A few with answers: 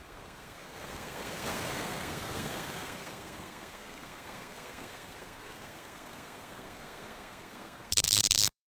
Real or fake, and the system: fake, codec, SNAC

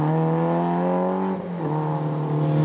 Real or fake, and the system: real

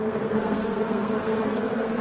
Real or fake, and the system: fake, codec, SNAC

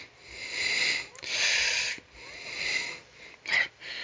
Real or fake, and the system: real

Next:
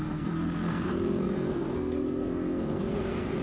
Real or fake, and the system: fake, codec, SNAC